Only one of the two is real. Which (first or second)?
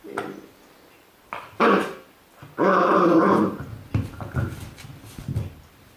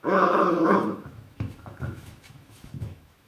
first